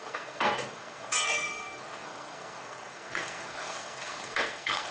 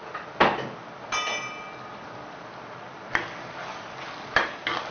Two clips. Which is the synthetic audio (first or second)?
first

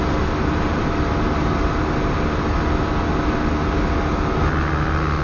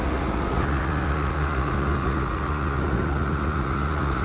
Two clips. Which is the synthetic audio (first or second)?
second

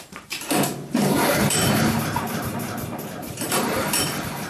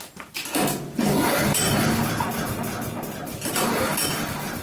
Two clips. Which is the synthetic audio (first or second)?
first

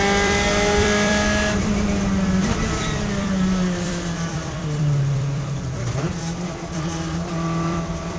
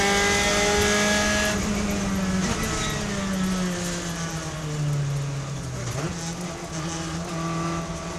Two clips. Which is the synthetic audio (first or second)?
first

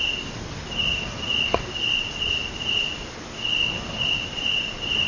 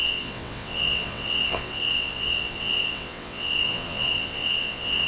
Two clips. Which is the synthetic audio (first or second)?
second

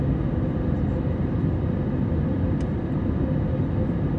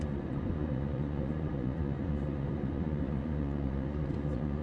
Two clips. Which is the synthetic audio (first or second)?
second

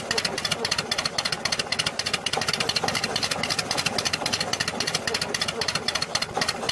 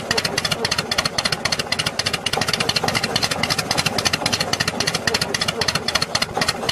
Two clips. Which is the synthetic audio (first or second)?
first